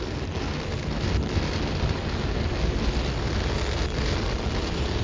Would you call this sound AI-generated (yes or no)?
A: no